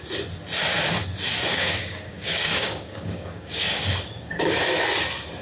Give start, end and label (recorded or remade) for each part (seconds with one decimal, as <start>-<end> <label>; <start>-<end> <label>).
0.0-1.5 recorded; 1.5-4.7 remade; 4.7-5.4 recorded